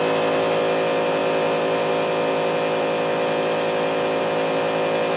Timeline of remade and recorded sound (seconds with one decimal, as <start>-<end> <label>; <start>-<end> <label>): 0.0-5.2 recorded